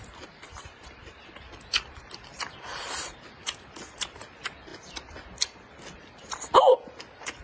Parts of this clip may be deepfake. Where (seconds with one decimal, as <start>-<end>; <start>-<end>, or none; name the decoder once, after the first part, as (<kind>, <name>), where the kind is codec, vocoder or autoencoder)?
0.0-7.4 (vocoder, BigVGAN v2)